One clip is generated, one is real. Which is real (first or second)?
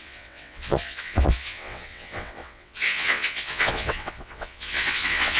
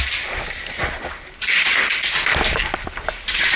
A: second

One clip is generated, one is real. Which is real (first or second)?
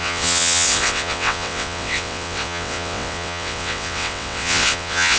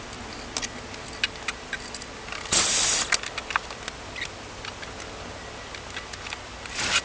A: second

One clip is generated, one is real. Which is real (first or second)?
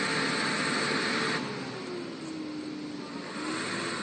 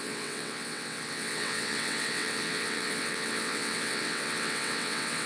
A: first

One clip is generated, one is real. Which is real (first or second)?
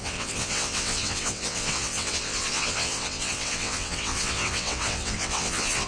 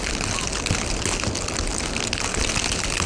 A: second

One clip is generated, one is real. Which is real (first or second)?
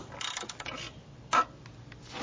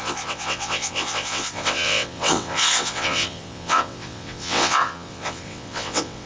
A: first